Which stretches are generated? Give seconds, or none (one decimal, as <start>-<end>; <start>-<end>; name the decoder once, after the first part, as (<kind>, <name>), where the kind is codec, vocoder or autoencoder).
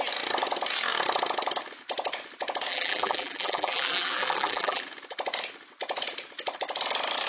2.7-4.8 (vocoder, BigVGAN v2)